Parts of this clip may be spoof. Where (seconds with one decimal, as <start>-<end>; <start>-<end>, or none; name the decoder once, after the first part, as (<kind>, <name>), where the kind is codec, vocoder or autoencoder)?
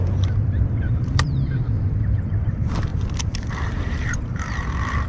0.0-2.9 (vocoder, BigVGAN v2); 3.5-5.1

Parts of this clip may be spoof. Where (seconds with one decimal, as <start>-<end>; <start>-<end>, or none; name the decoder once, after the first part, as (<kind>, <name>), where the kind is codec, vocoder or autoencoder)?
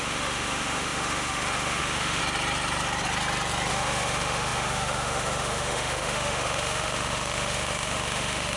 0.0-2.2 (autoencoder, DAC-VAE); 3.7-8.6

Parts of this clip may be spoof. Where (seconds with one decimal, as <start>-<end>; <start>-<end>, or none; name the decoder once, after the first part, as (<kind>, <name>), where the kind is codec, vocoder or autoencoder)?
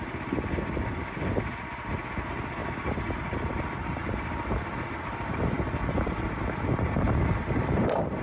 none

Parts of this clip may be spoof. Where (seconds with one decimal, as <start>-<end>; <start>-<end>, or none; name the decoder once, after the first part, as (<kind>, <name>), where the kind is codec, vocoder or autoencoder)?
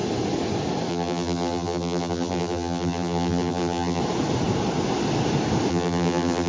0.9-4.0 (vocoder, BigVGAN v2); 5.7-6.5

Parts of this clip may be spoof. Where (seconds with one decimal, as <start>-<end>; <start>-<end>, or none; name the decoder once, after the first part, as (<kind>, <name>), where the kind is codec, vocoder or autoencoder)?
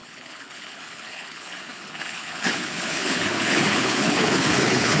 0.0-5.0 (codec, HILCodec)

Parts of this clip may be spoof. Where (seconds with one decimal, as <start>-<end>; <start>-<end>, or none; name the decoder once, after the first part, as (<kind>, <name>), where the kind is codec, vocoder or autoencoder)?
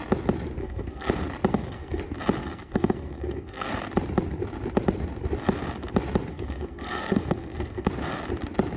0.6-1.1 (codec, SNAC); 1.5-2.0; 2.4-3.7; 6.3-7.9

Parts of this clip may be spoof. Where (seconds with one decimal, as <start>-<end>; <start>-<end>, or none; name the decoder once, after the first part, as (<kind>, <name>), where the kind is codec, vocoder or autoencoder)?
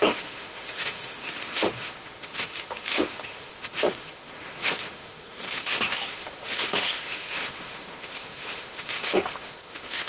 0.0-10.1 (autoencoder, DAC-VAE)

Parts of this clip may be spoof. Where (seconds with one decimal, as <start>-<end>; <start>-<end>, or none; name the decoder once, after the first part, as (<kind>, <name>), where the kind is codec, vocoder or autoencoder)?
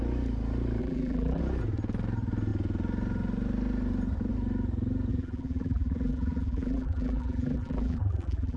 0.8-1.4 (vocoder, BigVGAN v2); 5.1-8.6